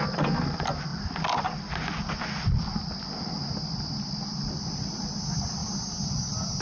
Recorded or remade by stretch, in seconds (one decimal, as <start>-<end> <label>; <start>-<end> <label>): 0.0-0.9 recorded; 0.9-3.1 remade; 3.1-5.6 recorded; 5.6-6.6 remade